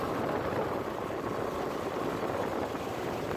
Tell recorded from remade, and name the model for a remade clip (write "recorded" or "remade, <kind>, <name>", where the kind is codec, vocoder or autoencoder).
recorded